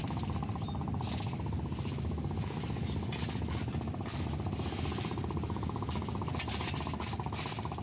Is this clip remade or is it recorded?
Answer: recorded